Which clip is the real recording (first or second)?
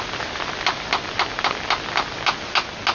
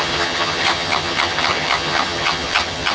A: first